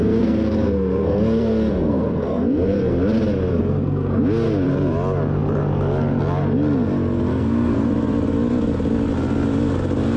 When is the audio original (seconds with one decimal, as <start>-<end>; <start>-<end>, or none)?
3.0-3.5; 4.2-7.3; 7.9-10.2